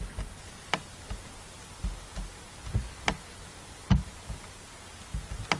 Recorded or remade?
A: recorded